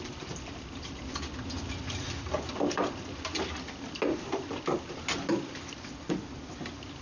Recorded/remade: recorded